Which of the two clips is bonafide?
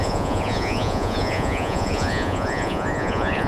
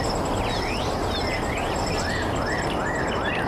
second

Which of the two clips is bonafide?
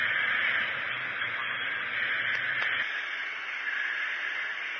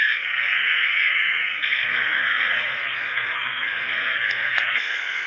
first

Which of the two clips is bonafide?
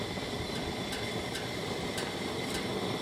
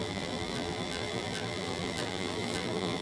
first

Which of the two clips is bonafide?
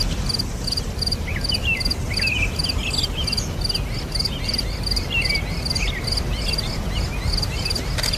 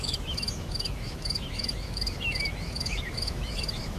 first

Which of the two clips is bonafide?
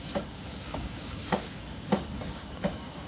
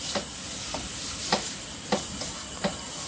second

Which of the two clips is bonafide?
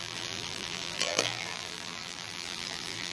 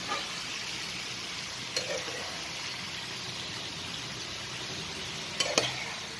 second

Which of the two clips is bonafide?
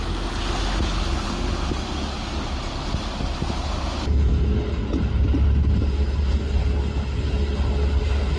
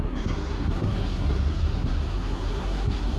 first